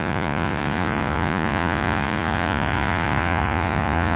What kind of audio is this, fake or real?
fake